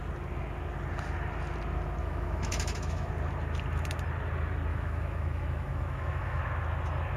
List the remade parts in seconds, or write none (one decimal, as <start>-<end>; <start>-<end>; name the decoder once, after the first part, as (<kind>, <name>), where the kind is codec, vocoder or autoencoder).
2.0-3.1 (autoencoder, DAC-VAE); 4.7-6.4